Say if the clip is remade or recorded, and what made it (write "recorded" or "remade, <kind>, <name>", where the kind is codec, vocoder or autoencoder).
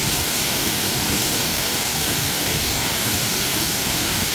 remade, codec, DAC